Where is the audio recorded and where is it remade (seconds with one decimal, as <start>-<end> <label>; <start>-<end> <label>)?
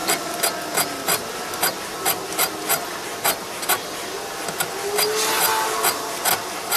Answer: 0.0-6.8 recorded